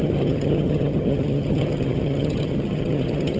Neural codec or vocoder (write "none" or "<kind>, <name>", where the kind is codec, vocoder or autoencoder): vocoder, HiFi-GAN